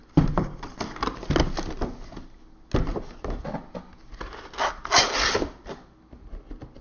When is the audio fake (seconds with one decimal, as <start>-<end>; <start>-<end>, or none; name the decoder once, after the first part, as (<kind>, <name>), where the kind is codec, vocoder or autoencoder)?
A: none